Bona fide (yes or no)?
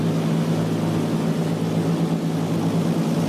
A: yes